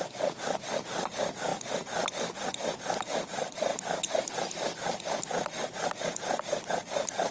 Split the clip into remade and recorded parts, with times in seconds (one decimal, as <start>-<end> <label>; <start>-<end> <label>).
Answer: 0.0-1.5 remade; 1.5-2.5 recorded; 2.5-3.7 remade; 3.7-6.7 recorded; 6.7-7.3 remade

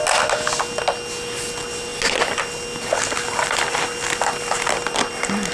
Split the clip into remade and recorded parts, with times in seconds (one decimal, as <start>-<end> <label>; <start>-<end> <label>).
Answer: 0.0-5.5 recorded